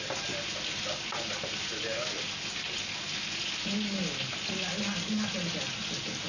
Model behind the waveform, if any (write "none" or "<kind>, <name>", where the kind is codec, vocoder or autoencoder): none